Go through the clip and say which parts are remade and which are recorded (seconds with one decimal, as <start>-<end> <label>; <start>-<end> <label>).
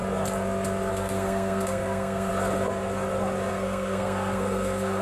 0.0-0.9 recorded; 0.9-2.3 remade; 2.3-3.5 recorded; 3.5-5.0 remade